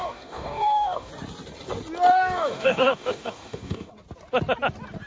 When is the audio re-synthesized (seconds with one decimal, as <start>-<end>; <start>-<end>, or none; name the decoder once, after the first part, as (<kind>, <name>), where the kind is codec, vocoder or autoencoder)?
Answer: 0.0-1.1 (codec, DAC); 2.1-3.9